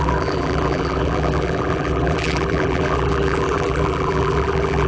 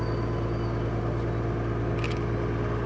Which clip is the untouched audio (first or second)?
second